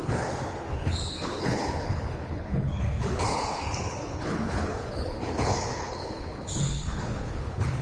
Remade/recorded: remade